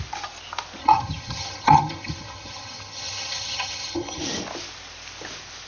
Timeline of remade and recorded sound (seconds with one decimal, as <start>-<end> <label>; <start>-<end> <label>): 0.0-0.8 recorded; 0.8-4.2 remade; 4.2-5.7 recorded